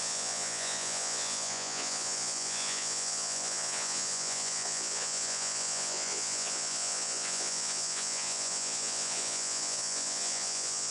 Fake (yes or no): yes